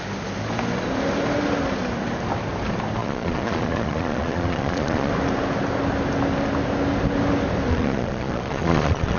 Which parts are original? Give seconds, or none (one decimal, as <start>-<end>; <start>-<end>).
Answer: 0.0-3.0; 5.1-7.7